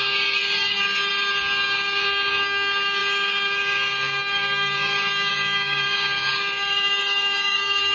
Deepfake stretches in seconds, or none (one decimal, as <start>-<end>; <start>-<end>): 0.0-7.9